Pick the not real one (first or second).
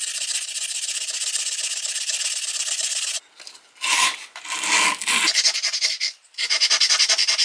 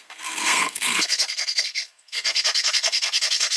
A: second